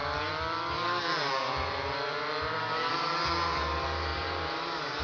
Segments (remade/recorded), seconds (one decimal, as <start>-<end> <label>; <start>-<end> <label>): 0.0-3.0 remade; 3.0-5.0 recorded